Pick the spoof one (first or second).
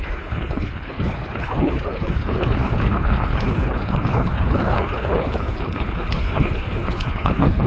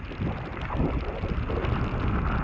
first